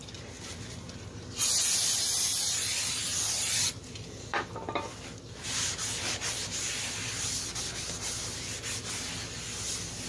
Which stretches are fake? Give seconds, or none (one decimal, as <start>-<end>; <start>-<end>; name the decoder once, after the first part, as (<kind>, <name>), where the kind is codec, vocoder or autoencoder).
none